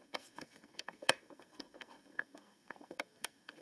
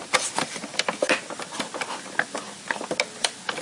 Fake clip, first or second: first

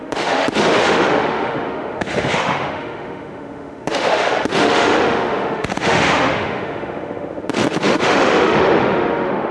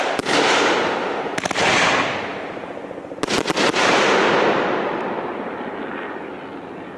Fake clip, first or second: first